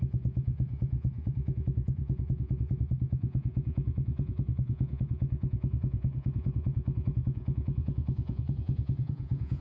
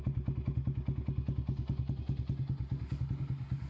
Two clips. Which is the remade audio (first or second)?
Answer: first